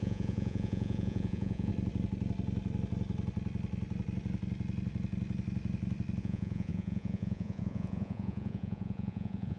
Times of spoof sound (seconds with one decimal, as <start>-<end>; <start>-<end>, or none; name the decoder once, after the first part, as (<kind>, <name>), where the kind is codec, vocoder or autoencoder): 0.0-1.7 (vocoder, Vocos); 6.2-9.6